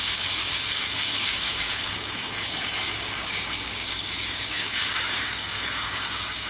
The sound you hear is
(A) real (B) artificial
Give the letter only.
B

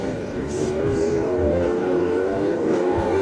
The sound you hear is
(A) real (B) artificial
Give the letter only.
B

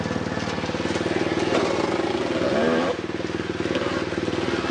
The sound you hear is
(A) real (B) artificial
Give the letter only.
A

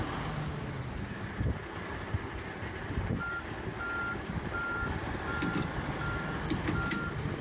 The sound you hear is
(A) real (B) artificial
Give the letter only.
A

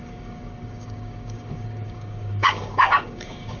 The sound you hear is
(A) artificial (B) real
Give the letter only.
A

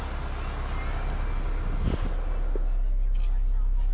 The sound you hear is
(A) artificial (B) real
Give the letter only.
B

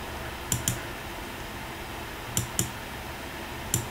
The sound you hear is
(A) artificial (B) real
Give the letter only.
B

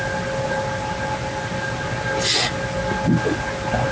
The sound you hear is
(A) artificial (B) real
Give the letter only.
B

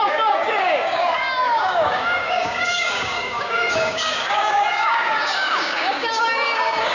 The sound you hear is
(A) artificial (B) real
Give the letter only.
A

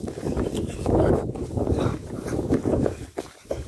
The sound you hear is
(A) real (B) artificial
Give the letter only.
B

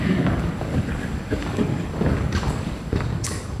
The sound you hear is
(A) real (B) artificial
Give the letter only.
B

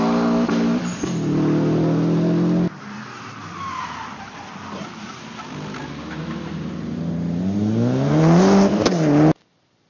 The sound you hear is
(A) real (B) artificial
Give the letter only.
A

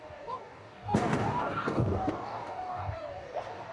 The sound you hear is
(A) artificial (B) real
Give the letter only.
A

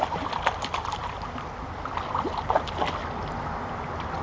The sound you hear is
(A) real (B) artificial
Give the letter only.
A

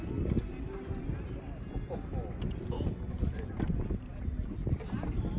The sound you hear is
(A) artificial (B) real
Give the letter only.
B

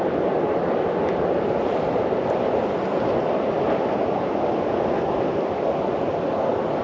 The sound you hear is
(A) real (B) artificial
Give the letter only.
A